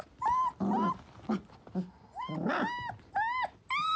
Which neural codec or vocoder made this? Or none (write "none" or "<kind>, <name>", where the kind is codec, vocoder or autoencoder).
none